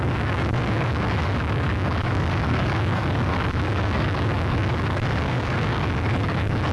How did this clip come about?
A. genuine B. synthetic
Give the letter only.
B